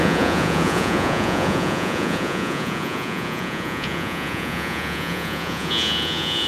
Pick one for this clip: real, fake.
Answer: fake